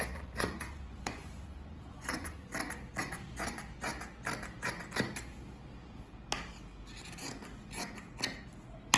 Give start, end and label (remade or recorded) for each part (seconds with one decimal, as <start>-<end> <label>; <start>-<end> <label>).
0.0-2.5 remade; 2.5-3.0 recorded; 3.0-3.9 remade; 3.9-9.0 recorded